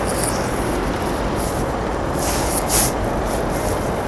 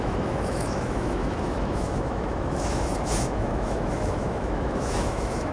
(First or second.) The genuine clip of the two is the first